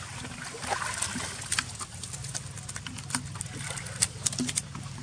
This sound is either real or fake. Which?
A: real